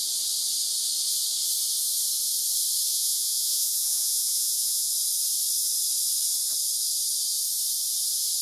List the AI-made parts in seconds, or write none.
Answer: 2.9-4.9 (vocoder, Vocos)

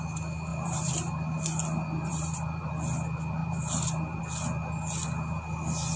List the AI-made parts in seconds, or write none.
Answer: 0.5-1.4 (vocoder, BigVGAN v2); 2.1-2.7; 3.4-4.2

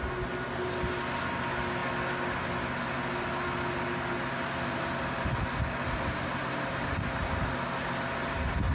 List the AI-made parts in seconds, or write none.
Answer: none

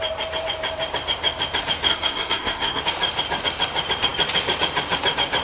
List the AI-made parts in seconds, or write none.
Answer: 1.9-2.8 (codec, SNAC)

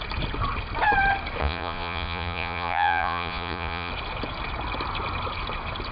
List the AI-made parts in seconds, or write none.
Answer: 1.4-3.9 (vocoder, Vocos)

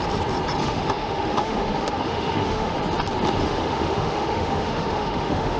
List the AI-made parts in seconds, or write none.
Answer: 0.6-2.8 (autoencoder, DAC-VAE); 3.4-5.6

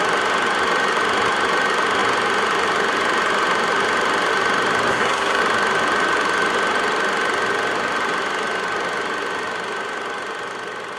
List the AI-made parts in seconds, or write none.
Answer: 4.9-5.4 (codec, SNAC)